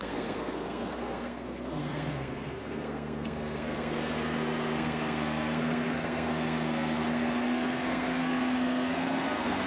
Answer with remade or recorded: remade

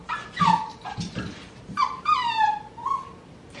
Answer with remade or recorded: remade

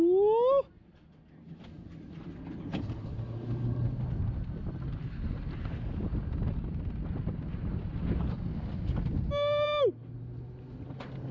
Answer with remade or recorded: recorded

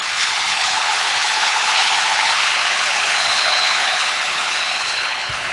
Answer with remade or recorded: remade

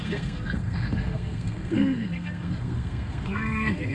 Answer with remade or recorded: remade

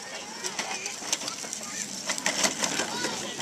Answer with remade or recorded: recorded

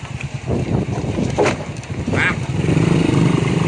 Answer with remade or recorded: recorded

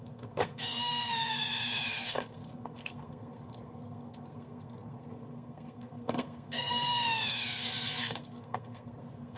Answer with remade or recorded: remade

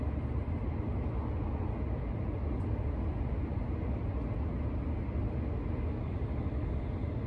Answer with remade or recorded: recorded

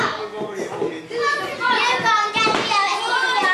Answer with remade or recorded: recorded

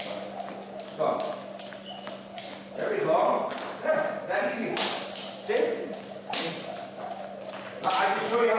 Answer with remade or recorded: recorded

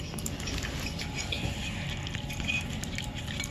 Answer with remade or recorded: recorded